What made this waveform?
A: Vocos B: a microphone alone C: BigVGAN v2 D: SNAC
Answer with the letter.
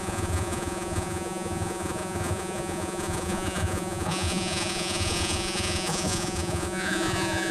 A